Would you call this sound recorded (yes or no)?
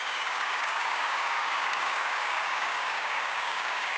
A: no